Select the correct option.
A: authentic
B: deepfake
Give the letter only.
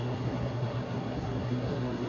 B